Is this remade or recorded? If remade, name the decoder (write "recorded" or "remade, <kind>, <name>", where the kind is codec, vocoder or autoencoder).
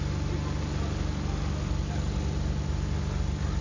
recorded